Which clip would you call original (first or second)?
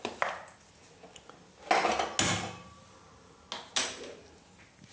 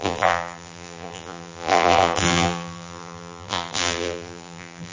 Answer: first